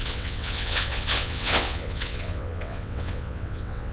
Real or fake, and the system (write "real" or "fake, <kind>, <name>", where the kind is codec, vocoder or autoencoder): fake, vocoder, WaveNeXt